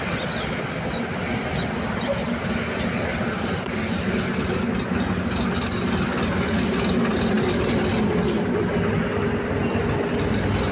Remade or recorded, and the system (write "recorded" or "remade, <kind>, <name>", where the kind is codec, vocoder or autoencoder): recorded